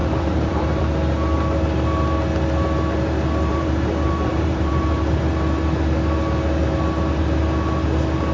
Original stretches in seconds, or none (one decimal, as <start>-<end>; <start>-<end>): 0.8-3.5; 5.2-8.3